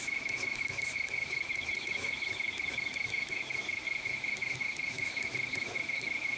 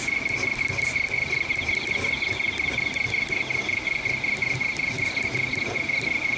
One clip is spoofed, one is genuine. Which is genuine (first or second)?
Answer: second